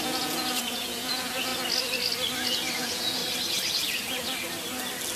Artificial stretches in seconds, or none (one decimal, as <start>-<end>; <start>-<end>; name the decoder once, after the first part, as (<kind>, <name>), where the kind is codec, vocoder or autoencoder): 0.0-1.5 (vocoder, Vocos); 2.8-3.2